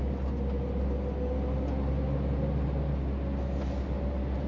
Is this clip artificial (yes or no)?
no